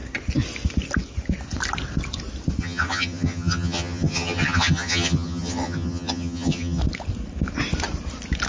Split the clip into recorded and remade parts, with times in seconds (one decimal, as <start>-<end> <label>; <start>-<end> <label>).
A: 0.0-2.6 recorded; 2.6-6.8 remade; 6.8-8.5 recorded